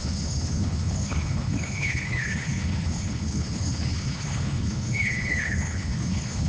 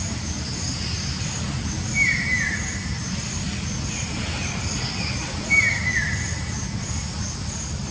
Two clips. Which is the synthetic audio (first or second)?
first